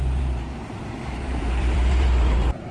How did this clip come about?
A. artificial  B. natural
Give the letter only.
A